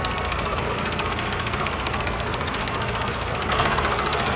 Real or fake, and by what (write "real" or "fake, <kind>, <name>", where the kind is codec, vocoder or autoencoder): fake, codec, SNAC